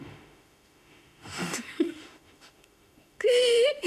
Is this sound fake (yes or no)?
yes